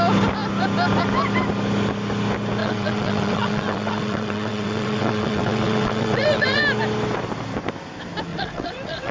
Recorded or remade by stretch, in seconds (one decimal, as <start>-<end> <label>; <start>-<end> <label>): 0.0-2.6 recorded; 2.6-6.6 remade; 6.6-8.3 recorded; 8.3-9.1 remade